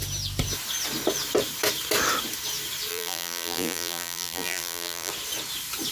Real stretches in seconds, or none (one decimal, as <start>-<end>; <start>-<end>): 0.0-2.9; 5.1-5.9